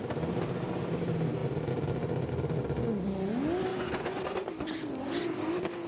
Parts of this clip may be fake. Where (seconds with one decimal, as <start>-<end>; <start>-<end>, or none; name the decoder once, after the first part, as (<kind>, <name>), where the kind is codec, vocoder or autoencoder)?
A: 3.7-4.2 (vocoder, Vocos)